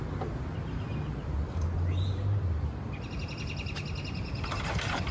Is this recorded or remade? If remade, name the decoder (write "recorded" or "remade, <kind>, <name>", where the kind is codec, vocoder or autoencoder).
recorded